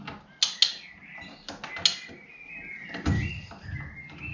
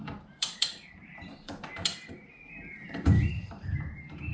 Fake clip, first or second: second